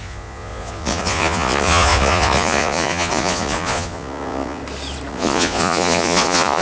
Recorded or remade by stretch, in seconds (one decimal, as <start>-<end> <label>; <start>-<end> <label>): 0.0-4.6 remade; 4.6-5.1 recorded; 5.1-6.6 remade